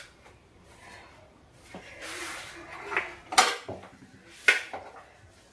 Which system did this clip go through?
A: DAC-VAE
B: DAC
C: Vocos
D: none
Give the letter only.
D